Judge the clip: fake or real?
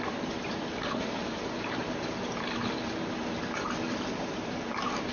fake